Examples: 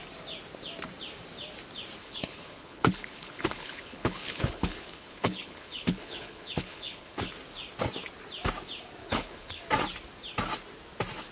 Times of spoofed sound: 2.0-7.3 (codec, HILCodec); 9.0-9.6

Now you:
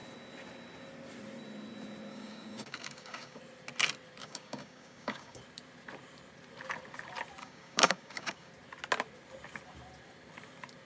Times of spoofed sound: 2.1-3.4 (codec, DAC); 4.2-5.4; 7.4-8.5

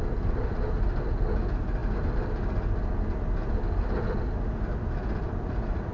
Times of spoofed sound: none

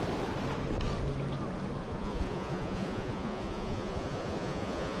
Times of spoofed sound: 1.8-5.0 (vocoder, Vocos)

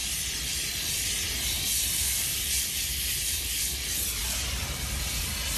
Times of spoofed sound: none

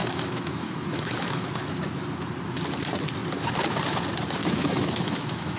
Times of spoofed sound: 0.0-1.7 (autoencoder, DAC-VAE); 4.4-5.6